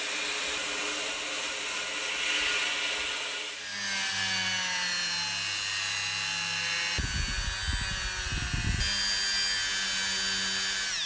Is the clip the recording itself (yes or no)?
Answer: yes